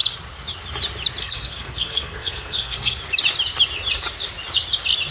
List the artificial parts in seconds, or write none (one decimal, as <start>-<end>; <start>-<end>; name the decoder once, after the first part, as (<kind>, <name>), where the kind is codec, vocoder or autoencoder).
1.2-3.0 (codec, SNAC)